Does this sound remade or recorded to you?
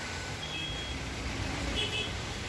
recorded